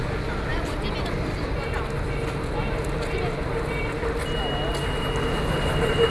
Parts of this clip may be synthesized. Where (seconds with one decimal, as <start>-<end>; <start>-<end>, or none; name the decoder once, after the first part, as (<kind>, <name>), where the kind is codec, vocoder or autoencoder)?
none